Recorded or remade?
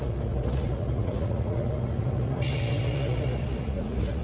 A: remade